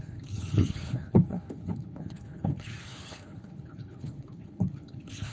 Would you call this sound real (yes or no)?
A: no